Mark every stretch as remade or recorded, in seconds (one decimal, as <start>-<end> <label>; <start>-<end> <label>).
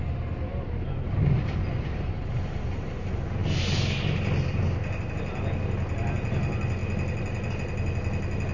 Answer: 0.0-8.5 recorded